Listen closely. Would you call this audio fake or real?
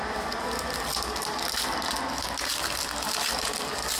real